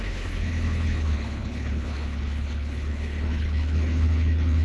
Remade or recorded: remade